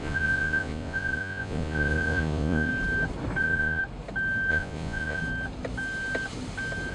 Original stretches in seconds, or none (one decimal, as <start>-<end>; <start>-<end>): 2.7-3.4; 3.8-4.5; 5.2-6.9

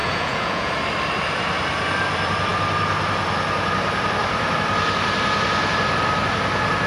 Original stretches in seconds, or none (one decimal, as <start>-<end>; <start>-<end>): 0.7-6.9

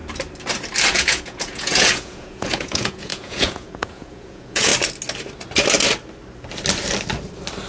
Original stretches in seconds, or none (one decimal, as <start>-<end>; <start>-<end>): 0.0-0.9; 4.7-7.7

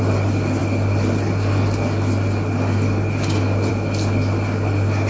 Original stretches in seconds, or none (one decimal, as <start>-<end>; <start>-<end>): 0.0-5.1

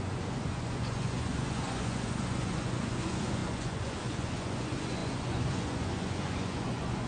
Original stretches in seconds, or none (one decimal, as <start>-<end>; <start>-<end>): none

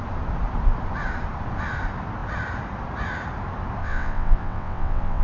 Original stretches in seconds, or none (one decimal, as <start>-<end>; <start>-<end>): 0.0-3.8